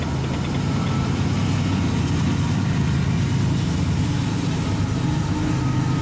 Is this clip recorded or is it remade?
recorded